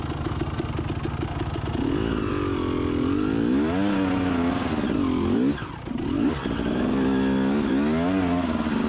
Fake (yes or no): no